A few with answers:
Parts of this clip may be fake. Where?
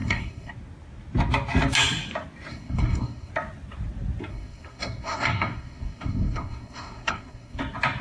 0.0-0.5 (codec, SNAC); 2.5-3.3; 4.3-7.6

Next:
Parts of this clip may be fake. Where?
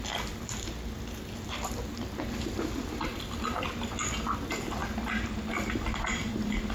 none